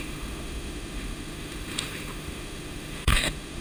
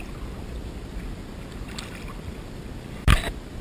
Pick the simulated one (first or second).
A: first